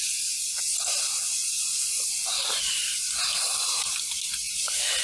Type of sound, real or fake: real